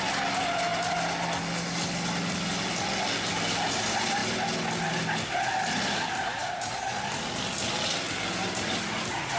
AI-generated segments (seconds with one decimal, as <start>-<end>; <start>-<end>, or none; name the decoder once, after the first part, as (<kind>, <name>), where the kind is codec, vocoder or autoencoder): none